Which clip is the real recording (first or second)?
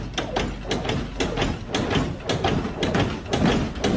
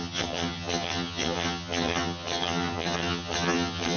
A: first